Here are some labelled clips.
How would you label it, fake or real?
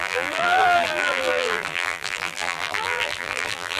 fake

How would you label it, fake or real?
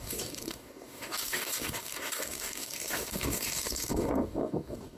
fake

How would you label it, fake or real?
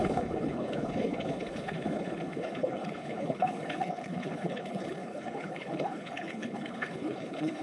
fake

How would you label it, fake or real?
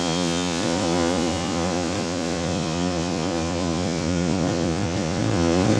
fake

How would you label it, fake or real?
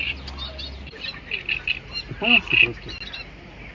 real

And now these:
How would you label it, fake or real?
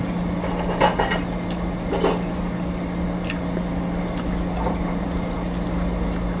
real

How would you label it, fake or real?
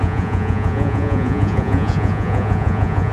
fake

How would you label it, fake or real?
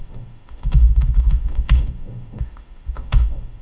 fake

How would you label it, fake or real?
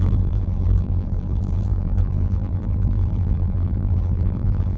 fake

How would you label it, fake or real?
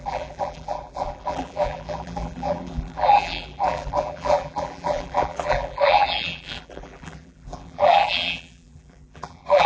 fake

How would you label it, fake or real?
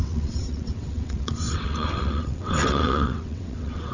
fake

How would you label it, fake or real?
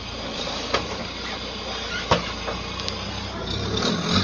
real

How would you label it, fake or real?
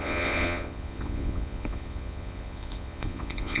fake